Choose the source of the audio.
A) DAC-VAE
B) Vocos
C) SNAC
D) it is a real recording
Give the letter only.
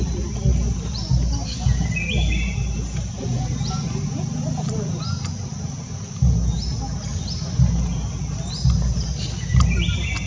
D